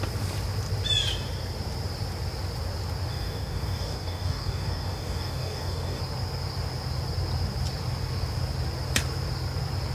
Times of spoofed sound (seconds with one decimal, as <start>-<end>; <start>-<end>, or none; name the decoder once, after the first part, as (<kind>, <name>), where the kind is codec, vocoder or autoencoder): 3.1-6.0 (codec, DAC)